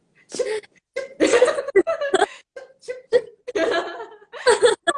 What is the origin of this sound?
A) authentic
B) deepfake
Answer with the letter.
A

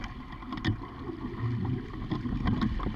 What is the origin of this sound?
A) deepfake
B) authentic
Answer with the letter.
B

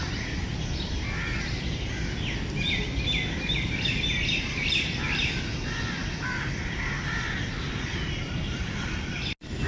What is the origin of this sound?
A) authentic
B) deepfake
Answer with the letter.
A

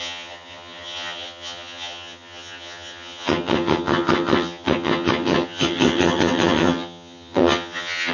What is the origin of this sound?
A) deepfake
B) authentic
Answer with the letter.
A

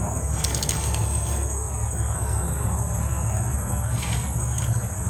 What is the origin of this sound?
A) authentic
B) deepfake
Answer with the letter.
B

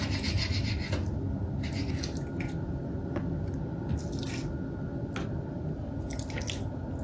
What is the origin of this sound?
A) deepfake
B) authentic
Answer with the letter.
B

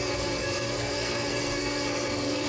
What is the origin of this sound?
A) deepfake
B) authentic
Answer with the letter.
A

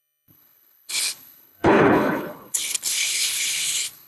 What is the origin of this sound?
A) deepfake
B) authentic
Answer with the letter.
A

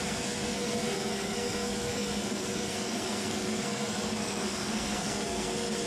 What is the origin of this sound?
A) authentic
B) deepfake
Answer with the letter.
B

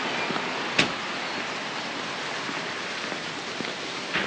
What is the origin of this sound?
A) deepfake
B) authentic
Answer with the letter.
B